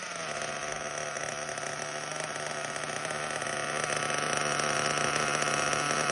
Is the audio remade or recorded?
recorded